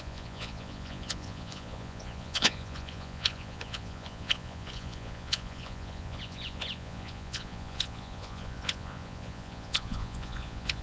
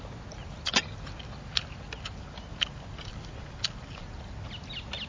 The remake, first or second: first